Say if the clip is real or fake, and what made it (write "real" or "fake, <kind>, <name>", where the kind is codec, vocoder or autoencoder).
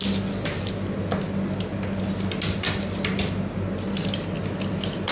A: real